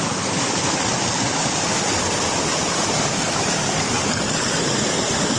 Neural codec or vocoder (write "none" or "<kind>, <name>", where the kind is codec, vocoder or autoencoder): none